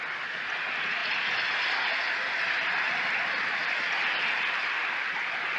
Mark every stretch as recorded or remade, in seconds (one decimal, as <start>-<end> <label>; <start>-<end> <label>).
0.0-5.6 recorded